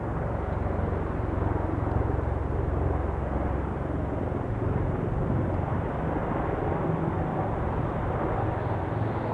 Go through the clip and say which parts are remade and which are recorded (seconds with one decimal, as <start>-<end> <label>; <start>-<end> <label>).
0.0-6.2 recorded; 6.2-8.0 remade; 8.0-9.3 recorded